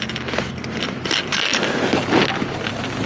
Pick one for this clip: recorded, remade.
recorded